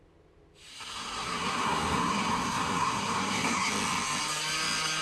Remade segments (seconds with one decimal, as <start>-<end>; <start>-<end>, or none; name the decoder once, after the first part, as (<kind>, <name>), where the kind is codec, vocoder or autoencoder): 0.7-3.7 (codec, SNAC)